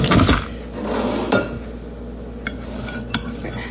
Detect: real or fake real